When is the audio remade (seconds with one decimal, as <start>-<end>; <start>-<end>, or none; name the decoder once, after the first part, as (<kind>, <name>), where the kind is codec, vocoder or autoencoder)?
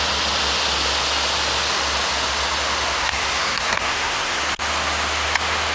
3.0-4.4 (codec, SNAC)